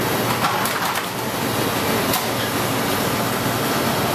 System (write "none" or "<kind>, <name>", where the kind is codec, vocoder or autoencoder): none